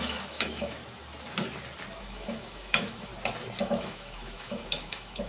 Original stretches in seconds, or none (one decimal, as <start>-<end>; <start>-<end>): 0.8-2.0; 3.1-3.6